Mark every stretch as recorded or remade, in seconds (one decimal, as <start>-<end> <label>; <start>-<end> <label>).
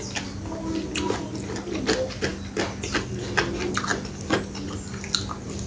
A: 0.0-5.7 recorded